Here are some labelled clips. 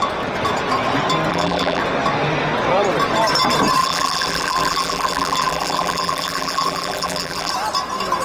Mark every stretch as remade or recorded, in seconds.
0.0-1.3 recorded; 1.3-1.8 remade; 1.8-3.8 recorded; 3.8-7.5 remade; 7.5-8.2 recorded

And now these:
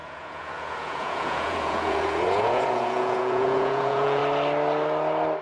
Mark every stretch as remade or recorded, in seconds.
0.0-4.2 remade; 4.2-5.4 recorded

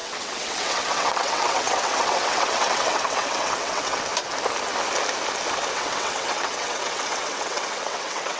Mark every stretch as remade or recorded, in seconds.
0.0-4.1 remade; 4.1-5.7 recorded; 5.7-8.4 remade